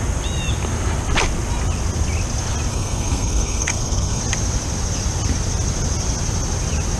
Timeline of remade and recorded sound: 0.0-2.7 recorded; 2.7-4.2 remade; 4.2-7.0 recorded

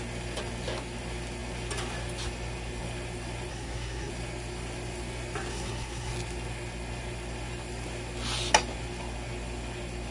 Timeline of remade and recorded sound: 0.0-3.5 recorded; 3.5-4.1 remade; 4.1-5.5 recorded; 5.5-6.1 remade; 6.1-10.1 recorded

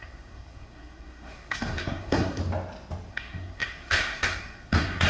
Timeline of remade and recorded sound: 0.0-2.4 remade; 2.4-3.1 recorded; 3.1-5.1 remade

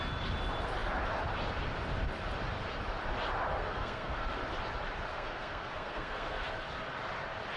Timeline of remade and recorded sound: 0.0-3.5 recorded; 3.5-4.2 remade; 4.2-5.1 recorded; 5.1-6.5 remade; 6.5-7.6 recorded